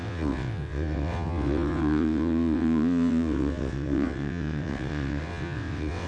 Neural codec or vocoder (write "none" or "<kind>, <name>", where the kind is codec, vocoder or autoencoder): vocoder, WaveNeXt